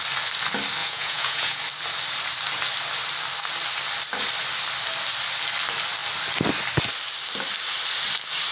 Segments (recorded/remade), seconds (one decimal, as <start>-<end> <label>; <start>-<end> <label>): 0.0-0.8 recorded; 0.8-1.6 remade; 1.6-8.5 recorded